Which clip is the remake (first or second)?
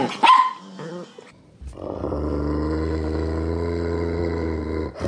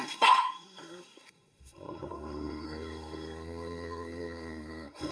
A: second